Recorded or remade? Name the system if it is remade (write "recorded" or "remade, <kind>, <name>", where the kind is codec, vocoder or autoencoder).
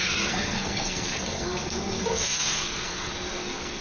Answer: remade, codec, SNAC